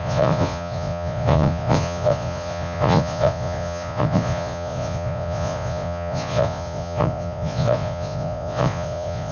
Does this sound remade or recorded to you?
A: remade